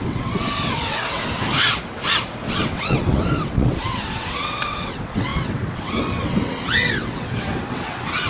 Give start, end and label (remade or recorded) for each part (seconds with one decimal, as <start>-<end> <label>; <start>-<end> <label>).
0.0-1.2 remade; 1.2-2.5 recorded; 2.5-8.3 remade